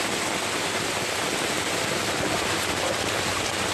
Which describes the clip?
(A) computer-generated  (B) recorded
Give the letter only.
B